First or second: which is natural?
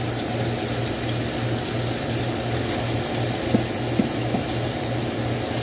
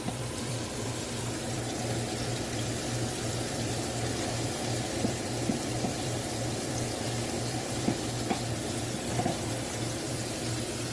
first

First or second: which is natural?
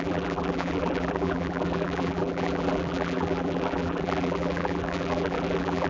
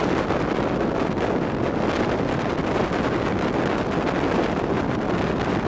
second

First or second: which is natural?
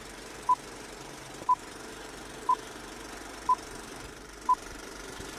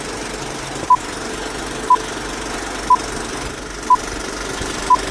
second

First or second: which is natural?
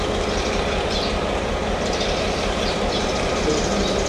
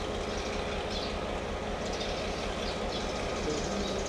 second